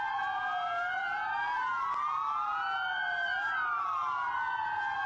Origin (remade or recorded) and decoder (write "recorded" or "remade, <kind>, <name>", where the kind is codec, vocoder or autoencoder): recorded